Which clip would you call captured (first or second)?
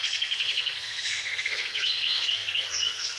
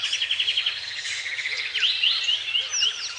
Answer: second